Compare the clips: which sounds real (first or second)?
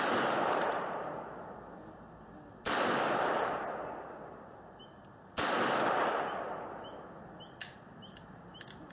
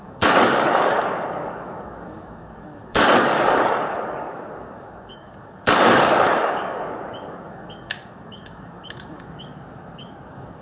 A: first